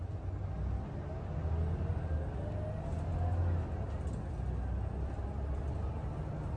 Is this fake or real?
real